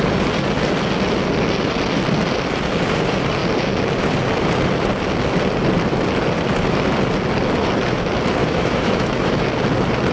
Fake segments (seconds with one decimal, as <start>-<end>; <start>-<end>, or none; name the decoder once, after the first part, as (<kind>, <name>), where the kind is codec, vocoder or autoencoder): 8.4-9.5 (autoencoder, DAC-VAE)